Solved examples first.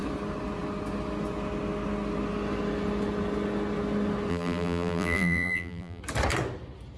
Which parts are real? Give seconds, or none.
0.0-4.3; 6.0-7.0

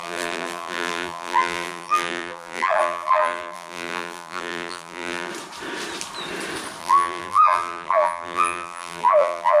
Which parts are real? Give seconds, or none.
5.3-6.8